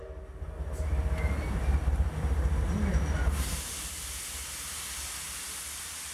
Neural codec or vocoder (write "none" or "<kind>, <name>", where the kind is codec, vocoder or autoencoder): none